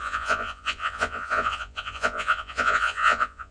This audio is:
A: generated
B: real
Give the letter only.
A